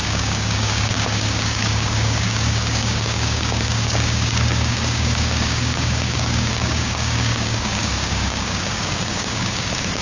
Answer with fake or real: fake